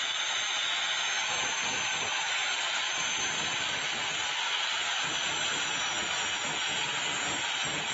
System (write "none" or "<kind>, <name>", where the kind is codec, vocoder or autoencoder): none